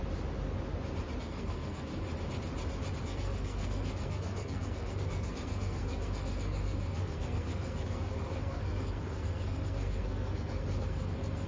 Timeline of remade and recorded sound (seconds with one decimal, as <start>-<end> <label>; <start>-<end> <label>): 0.0-1.2 recorded; 1.2-1.9 remade; 1.9-3.0 recorded; 3.0-11.5 remade